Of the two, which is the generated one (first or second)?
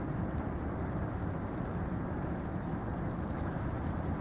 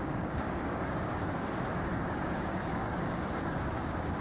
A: second